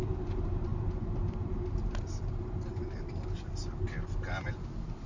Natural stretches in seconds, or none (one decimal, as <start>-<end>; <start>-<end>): 0.0-5.1